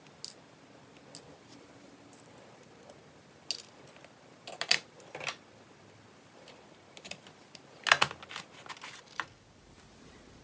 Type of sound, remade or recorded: recorded